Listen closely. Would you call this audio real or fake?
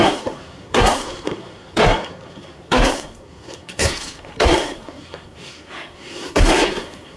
fake